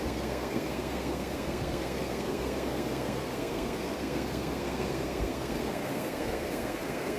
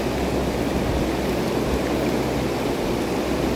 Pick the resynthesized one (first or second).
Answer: first